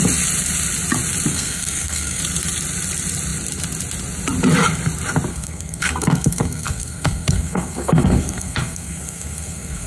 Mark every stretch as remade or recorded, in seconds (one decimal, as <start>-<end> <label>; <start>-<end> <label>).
0.0-1.3 recorded; 1.3-2.2 remade; 2.2-5.3 recorded; 5.3-9.9 remade

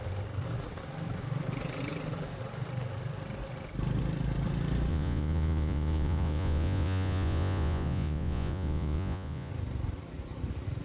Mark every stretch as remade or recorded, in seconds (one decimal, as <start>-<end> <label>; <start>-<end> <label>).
0.0-4.9 recorded; 4.9-9.5 remade; 9.5-10.8 recorded

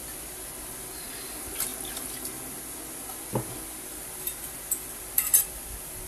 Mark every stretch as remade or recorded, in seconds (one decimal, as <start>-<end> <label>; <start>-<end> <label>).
0.0-0.8 recorded; 0.8-1.7 remade; 1.7-3.2 recorded; 3.2-6.1 remade

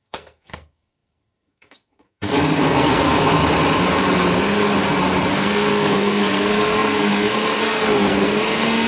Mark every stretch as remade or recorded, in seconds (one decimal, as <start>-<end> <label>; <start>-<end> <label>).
0.0-3.4 remade; 3.4-5.4 recorded; 5.4-8.9 remade